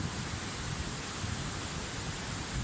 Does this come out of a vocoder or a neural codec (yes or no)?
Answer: no